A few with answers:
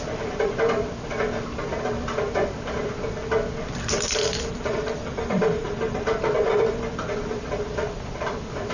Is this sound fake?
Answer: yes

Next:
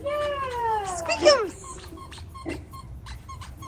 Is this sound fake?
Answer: yes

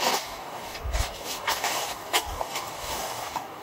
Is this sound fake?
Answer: yes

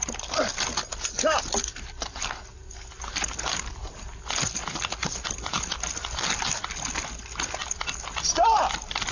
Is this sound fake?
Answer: no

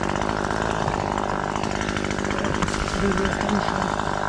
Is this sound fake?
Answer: no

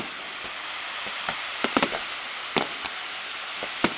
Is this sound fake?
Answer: no